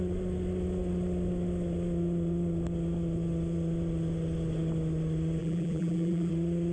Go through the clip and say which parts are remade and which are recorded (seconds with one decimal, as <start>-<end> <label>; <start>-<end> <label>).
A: 0.0-5.4 recorded; 5.4-6.3 remade; 6.3-6.7 recorded